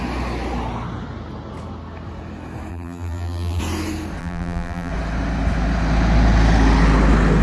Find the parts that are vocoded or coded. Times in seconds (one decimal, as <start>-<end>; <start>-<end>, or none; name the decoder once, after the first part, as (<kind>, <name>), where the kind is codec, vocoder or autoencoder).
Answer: 2.7-3.6 (vocoder, BigVGAN v2); 4.2-4.9